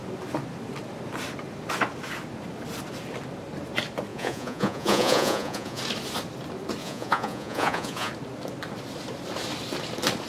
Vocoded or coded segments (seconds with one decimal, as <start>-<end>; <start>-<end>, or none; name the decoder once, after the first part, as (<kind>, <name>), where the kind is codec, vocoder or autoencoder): 4.1-5.8 (vocoder, Vocos); 6.8-8.1